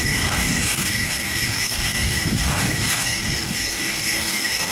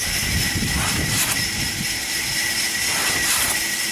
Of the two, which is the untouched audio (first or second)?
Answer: second